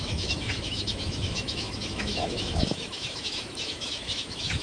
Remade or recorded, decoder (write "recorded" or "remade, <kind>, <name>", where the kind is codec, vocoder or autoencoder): remade, autoencoder, DAC-VAE